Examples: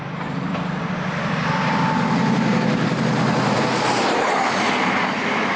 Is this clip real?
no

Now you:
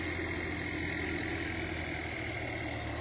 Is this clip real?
yes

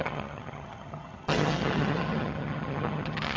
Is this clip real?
no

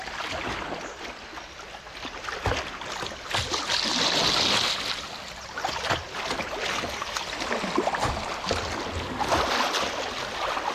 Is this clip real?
yes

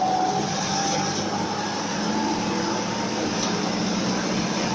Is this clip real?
yes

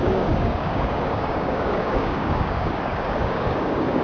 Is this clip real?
no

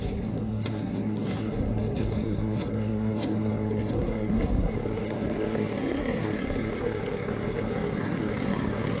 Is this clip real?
no